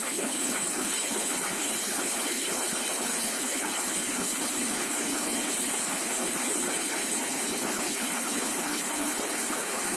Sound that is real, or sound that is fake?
fake